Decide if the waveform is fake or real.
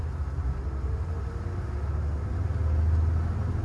real